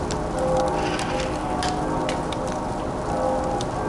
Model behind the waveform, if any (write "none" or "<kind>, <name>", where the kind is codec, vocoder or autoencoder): none